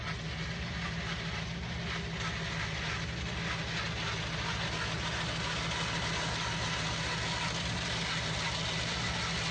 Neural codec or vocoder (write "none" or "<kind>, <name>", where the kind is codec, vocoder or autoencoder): none